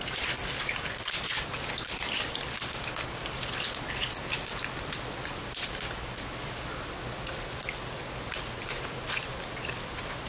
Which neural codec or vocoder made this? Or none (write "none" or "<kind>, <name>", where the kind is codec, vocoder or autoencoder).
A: none